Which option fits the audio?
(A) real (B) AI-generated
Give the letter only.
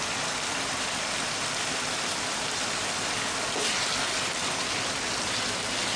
A